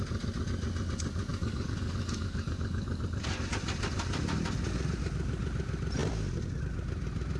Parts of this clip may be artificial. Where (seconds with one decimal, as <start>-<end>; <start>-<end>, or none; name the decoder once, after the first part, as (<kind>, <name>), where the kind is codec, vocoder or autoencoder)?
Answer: 1.3-3.0 (codec, DAC)